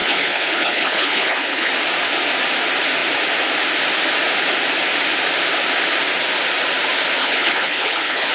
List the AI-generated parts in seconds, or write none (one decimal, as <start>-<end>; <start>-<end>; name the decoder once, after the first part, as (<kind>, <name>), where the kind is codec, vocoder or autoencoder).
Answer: 0.0-1.7 (codec, HILCodec); 7.2-8.3